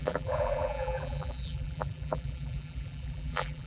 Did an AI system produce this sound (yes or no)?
yes